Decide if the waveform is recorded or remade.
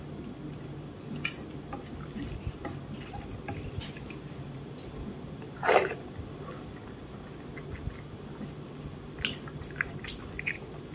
recorded